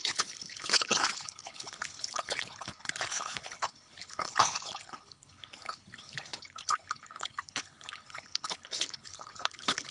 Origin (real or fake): fake